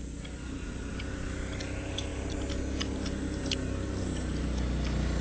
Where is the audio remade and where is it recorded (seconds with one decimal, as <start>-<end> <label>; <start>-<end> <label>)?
0.0-5.2 recorded